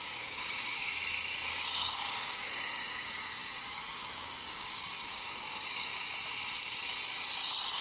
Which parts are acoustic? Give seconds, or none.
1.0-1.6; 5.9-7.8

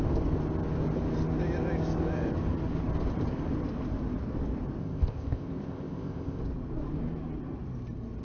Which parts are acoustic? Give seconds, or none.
0.0-4.8; 6.4-8.2

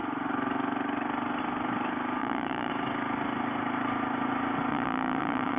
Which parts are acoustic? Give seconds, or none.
0.0-2.2; 2.7-4.7

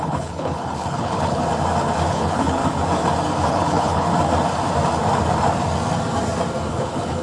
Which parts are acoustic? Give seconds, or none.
1.4-2.1; 2.6-3.4; 4.1-6.7

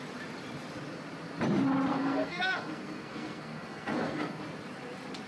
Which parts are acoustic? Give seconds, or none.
0.0-1.9; 4.4-5.3